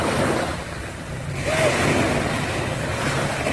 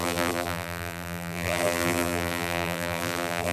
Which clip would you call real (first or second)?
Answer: first